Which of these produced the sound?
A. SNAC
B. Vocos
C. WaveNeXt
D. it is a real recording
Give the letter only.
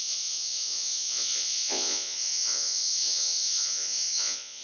B